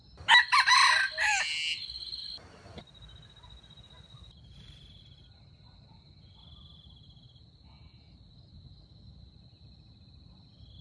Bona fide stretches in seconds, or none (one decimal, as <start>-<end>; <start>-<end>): 0.0-10.8